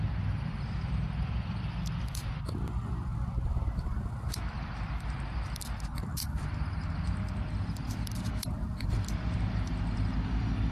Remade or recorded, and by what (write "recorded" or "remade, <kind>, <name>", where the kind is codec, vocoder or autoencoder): remade, vocoder, BigVGAN v2